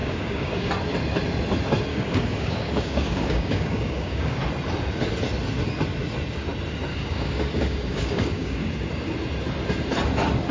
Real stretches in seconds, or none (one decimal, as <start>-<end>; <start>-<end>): 0.7-1.9; 4.4-6.9; 8.7-10.5